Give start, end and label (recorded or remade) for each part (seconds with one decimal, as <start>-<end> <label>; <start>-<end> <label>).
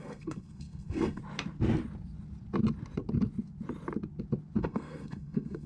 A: 0.0-1.2 remade; 1.2-4.6 recorded; 4.6-5.7 remade